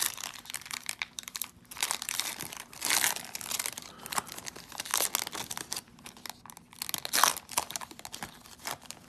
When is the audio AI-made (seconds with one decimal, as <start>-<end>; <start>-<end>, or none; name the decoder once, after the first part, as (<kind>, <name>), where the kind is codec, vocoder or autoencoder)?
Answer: 0.0-4.9 (vocoder, BigVGAN v2); 8.2-9.1